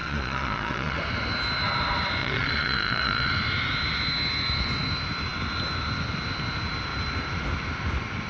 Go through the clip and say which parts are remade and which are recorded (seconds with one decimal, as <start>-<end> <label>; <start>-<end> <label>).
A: 0.0-1.0 remade; 1.0-2.2 recorded; 2.2-3.3 remade; 3.3-8.3 recorded